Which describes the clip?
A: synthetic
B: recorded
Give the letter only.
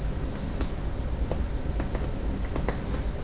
B